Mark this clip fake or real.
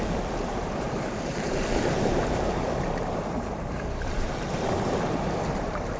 fake